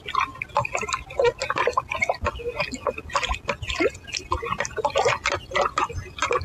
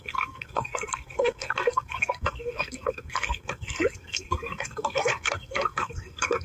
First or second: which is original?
first